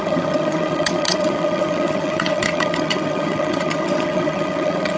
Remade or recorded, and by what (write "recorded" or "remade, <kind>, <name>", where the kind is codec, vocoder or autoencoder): remade, vocoder, HiFi-GAN